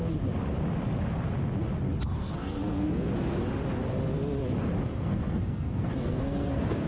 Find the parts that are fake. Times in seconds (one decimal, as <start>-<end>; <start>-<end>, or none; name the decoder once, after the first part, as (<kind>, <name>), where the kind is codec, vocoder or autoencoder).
2.2-3.1 (codec, SNAC); 4.9-6.9